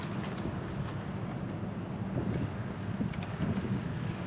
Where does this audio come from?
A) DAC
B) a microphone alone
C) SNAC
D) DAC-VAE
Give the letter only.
B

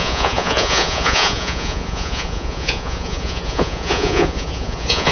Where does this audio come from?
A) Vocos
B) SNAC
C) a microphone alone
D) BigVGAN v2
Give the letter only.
A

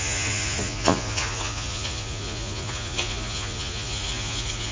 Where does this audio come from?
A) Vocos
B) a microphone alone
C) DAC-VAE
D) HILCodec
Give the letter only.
A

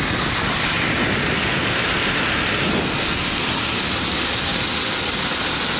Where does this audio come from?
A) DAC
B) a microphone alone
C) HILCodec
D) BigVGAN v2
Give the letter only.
B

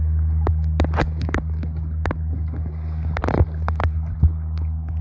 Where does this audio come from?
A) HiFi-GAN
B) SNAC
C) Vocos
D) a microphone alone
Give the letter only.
D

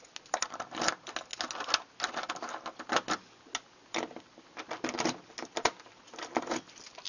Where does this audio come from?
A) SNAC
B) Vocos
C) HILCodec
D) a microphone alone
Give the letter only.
D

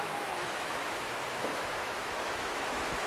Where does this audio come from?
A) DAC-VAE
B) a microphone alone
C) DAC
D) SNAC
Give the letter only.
A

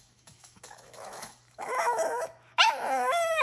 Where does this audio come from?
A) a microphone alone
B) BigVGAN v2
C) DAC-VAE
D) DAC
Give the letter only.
C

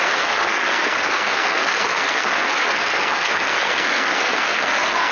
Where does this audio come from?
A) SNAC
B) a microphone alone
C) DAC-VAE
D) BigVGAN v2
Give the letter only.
A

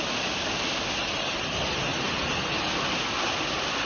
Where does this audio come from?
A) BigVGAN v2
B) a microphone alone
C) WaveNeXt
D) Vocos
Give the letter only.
B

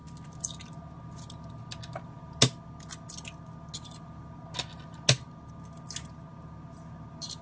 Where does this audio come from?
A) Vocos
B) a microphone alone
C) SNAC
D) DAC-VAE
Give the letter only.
B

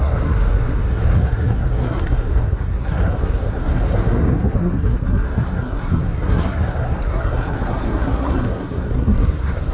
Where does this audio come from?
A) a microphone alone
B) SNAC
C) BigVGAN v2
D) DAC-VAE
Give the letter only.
B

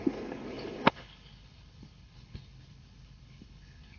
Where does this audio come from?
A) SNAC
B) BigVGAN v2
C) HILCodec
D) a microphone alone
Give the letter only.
C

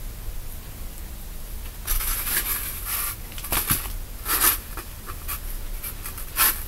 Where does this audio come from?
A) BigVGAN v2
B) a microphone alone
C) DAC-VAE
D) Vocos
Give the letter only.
B